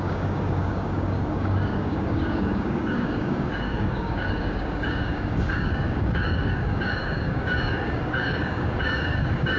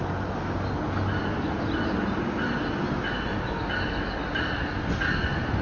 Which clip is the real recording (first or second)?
second